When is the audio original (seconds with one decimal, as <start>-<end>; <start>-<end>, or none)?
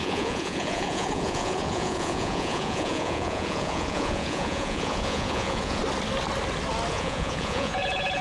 5.8-6.9